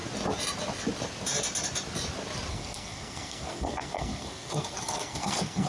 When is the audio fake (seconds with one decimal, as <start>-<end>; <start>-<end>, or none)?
2.5-5.7